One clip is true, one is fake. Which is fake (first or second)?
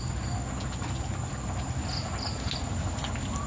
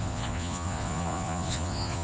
second